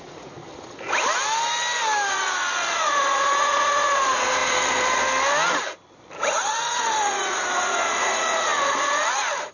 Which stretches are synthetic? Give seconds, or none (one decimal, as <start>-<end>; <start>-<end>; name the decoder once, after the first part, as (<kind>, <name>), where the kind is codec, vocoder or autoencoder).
0.0-0.4 (vocoder, Vocos); 2.1-4.4; 6.3-9.5